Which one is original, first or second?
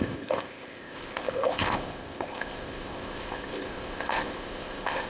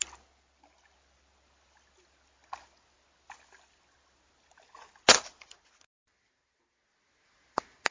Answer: second